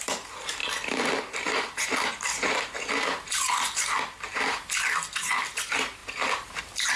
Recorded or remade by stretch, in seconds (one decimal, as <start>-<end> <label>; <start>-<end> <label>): 0.0-7.0 remade